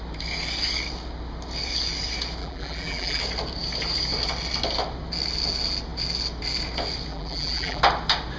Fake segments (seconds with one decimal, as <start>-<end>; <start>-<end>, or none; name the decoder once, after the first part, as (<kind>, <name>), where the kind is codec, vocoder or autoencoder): 2.4-3.2 (vocoder, BigVGAN v2); 7.1-7.8